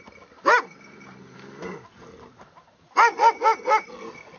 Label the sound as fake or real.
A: real